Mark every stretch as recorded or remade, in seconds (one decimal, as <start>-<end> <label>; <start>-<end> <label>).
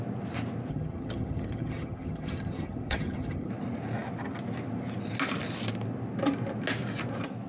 0.0-0.7 recorded; 0.7-3.5 remade; 3.5-7.5 recorded